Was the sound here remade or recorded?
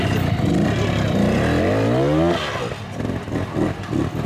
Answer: recorded